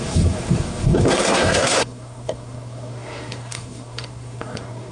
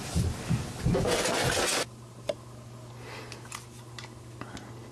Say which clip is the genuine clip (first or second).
second